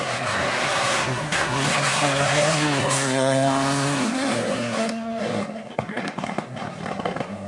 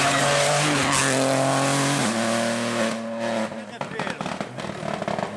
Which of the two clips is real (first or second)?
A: second